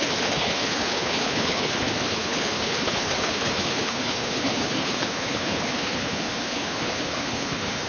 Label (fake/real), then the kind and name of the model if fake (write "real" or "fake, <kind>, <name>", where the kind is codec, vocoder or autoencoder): fake, codec, HILCodec